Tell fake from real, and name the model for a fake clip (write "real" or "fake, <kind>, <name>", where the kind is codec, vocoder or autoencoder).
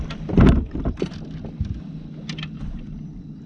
real